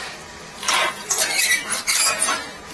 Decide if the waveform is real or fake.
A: real